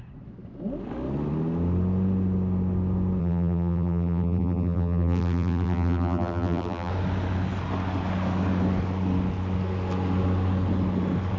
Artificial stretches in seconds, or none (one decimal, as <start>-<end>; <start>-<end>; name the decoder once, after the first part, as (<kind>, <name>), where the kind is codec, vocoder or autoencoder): 3.2-6.9 (vocoder, BigVGAN v2)